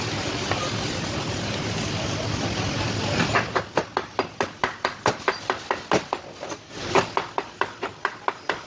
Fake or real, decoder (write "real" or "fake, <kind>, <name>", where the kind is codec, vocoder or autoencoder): real